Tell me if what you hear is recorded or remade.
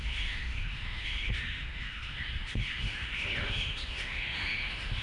remade